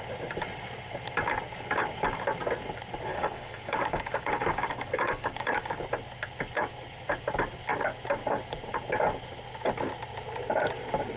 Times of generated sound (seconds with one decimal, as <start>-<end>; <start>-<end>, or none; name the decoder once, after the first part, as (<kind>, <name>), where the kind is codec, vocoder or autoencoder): 3.1-5.7 (codec, DAC)